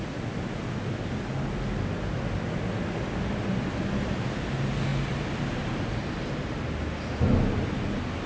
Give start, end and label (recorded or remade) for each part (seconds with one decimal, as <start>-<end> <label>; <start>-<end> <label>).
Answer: 0.0-8.3 recorded